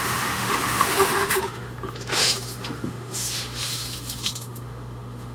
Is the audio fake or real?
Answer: fake